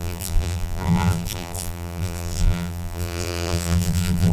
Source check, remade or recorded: remade